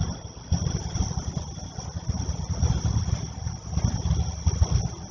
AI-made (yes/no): no